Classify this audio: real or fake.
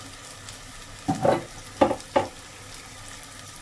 real